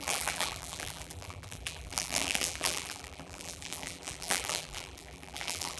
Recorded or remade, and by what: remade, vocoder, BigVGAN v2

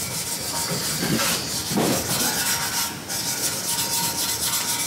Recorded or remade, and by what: recorded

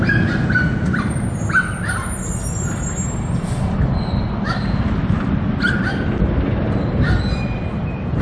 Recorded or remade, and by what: recorded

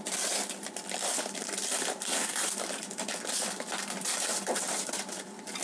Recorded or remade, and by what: remade, vocoder, BigVGAN v2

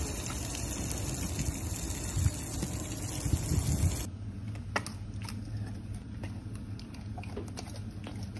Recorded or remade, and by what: recorded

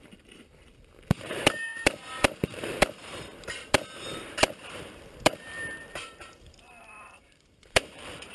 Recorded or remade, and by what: remade, vocoder, BigVGAN v2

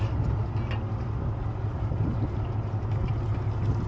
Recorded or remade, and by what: recorded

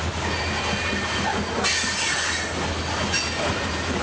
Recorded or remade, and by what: recorded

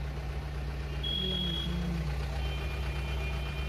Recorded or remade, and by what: recorded